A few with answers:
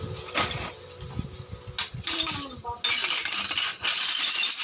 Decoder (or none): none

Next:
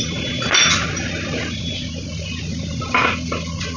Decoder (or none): none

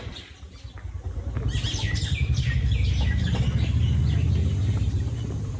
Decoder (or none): none